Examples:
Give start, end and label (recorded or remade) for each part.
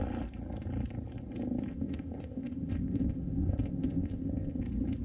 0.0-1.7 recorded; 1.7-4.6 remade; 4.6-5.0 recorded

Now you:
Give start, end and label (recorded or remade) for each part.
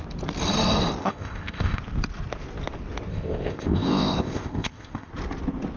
0.0-1.0 recorded; 1.0-1.8 remade; 1.8-3.1 recorded; 3.1-5.1 remade; 5.1-5.8 recorded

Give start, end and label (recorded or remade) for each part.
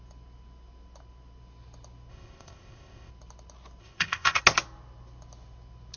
0.0-2.1 recorded; 2.1-3.1 remade; 3.1-3.8 recorded; 3.8-4.4 remade; 4.4-6.0 recorded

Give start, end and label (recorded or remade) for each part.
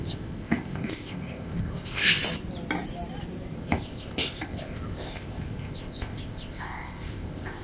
0.0-2.2 remade; 2.2-3.6 recorded; 3.6-7.6 remade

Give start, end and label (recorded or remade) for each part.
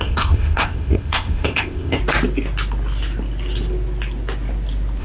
0.0-2.0 remade; 2.0-5.0 recorded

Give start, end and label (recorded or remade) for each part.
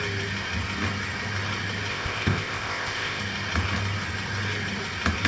0.0-1.9 recorded; 1.9-3.2 remade; 3.2-5.3 recorded